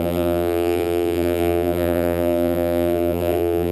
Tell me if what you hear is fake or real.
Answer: fake